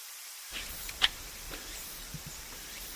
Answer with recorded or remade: remade